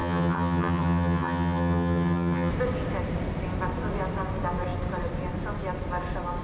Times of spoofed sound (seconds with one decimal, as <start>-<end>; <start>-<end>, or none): 0.0-2.5